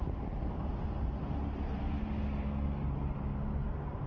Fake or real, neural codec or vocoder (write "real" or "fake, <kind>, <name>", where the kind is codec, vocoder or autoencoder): real